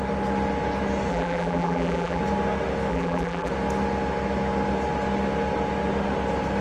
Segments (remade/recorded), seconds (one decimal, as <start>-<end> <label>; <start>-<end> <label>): 0.0-1.1 recorded; 1.1-2.2 remade; 2.2-2.9 recorded; 2.9-3.5 remade; 3.5-6.6 recorded